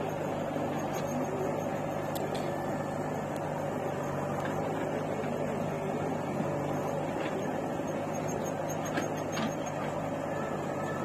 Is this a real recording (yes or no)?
yes